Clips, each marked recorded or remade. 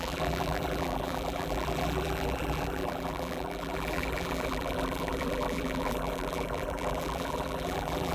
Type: remade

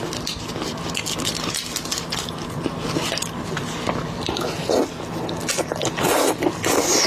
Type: recorded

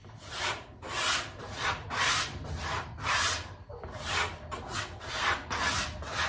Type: remade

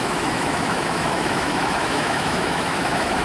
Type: remade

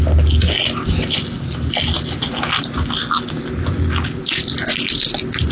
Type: recorded